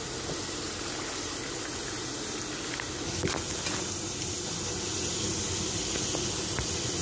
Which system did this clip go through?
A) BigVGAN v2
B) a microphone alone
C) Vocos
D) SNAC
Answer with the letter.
B